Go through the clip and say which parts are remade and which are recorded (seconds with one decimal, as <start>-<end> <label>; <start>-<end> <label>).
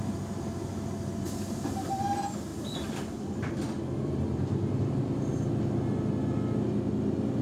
0.0-2.5 recorded; 2.5-5.4 remade; 5.4-7.4 recorded